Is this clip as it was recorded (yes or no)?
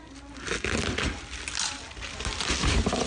yes